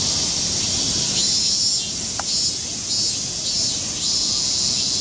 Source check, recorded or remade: recorded